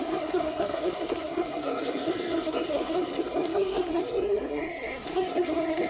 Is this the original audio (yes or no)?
no